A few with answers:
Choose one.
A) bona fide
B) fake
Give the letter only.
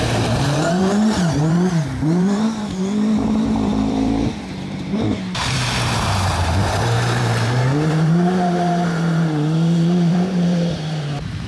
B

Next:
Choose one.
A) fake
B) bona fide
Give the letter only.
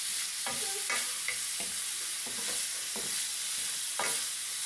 B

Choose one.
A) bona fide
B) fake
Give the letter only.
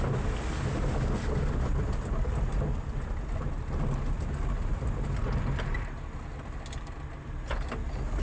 A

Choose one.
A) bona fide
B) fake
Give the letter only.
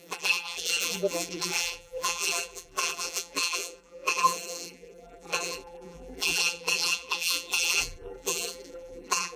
B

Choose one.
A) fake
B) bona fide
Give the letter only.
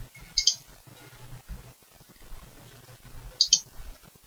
B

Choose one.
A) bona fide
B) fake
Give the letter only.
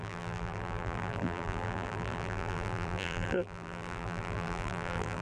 B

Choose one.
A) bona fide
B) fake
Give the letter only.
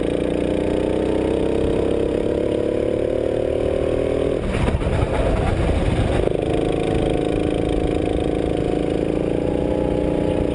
A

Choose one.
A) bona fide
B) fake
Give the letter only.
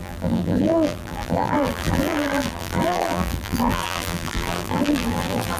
B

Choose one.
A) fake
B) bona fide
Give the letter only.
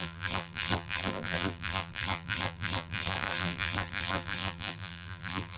A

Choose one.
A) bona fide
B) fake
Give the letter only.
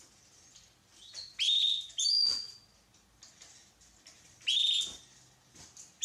A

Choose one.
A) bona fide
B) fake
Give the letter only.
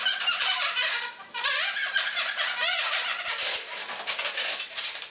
B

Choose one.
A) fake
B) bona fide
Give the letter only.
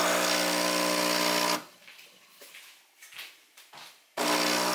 B